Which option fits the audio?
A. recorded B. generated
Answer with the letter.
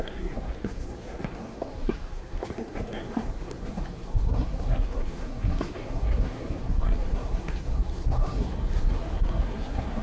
B